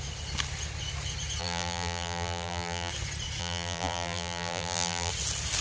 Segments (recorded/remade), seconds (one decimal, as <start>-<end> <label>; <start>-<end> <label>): 0.0-1.4 recorded; 1.4-2.9 remade; 2.9-3.4 recorded; 3.4-5.1 remade; 5.1-5.6 recorded